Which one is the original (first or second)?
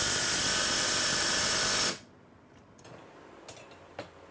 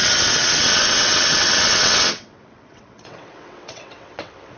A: first